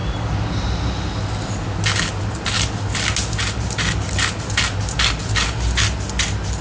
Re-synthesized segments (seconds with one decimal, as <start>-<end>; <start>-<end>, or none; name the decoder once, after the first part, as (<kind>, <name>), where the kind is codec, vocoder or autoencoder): none